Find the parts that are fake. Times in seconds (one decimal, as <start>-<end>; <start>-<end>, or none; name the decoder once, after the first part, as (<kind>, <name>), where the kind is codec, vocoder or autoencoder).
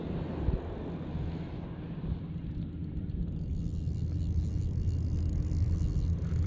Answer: 2.8-3.5 (vocoder, BigVGAN v2)